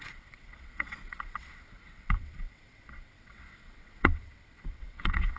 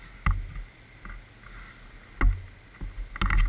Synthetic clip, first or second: first